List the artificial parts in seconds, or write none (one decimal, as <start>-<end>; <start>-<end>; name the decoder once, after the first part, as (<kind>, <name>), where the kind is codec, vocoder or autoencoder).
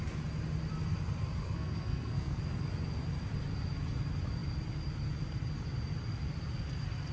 1.4-2.4 (codec, SNAC)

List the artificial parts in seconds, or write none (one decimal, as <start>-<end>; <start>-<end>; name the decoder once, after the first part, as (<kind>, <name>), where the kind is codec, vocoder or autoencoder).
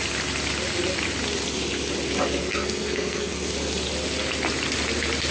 2.4-3.5 (codec, SNAC)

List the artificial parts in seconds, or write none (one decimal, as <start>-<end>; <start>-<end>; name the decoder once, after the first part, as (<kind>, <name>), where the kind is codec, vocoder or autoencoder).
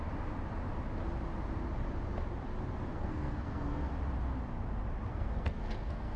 2.9-3.9 (codec, SNAC); 5.1-6.2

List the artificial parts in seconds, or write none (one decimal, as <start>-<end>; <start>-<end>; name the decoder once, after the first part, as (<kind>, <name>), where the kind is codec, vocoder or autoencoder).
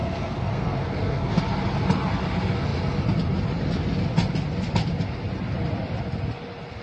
0.0-1.4 (codec, SNAC)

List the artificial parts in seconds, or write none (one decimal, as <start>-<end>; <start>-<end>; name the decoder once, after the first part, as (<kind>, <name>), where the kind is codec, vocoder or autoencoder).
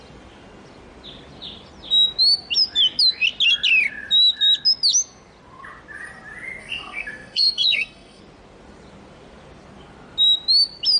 6.6-8.2 (codec, SNAC)